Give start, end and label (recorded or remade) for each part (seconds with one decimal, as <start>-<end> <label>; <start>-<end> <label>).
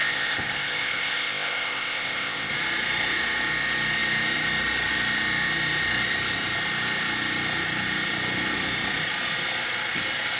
0.0-2.5 remade; 2.5-10.4 recorded